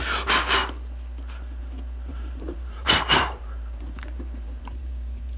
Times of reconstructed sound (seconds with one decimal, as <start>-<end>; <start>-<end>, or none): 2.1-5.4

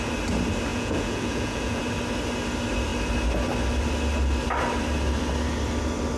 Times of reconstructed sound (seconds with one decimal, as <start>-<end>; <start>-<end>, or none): 0.7-1.8

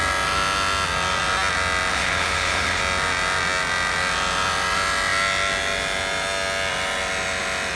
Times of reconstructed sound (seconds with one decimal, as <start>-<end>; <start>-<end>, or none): 1.9-2.8

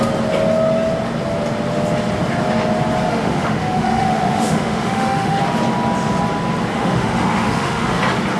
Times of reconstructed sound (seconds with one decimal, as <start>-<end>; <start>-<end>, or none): 3.1-5.4; 6.7-8.0

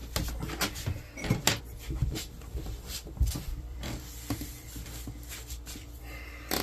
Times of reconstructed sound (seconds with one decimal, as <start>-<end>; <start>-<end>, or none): 2.0-6.0

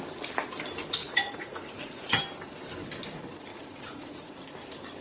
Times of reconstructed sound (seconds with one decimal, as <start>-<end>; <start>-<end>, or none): 1.0-2.2; 3.5-4.3

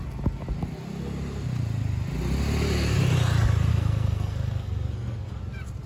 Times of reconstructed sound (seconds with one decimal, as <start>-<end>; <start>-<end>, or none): 3.7-5.4